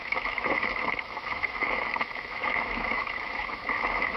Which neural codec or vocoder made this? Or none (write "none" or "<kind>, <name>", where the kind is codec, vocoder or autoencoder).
autoencoder, DAC-VAE